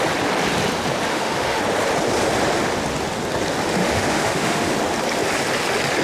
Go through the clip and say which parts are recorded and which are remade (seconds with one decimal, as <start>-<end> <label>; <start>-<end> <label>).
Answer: 0.0-1.1 recorded; 1.1-1.6 remade; 1.6-3.8 recorded; 3.8-4.7 remade; 4.7-6.0 recorded